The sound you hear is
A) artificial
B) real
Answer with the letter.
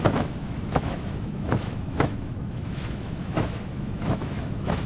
A